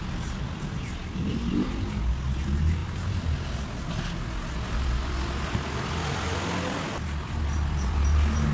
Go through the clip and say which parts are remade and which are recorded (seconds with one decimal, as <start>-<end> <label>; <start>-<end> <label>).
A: 0.0-8.5 recorded